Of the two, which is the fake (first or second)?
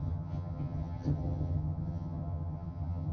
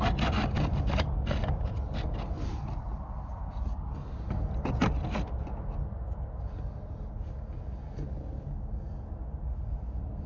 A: first